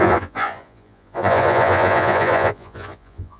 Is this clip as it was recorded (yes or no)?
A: no